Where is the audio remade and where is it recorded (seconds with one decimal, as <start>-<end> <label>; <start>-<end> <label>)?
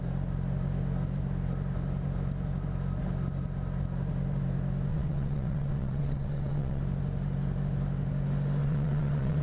0.0-4.9 recorded; 4.9-6.8 remade; 6.8-8.6 recorded; 8.6-9.4 remade